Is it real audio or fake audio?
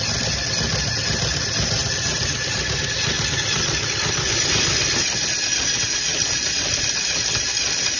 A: real